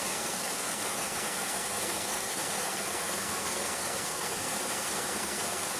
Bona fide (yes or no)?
no